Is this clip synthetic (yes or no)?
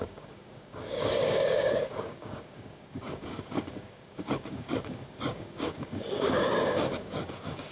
yes